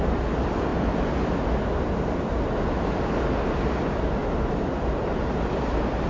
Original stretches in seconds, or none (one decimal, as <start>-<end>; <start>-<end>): 0.0-6.1